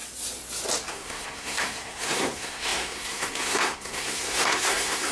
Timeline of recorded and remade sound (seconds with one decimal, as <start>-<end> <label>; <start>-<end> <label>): 0.0-0.9 recorded; 0.9-5.1 remade